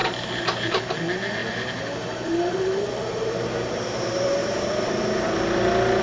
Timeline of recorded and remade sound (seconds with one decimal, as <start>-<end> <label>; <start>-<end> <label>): 0.0-0.8 remade; 0.8-1.4 recorded; 1.4-5.0 remade; 5.0-6.0 recorded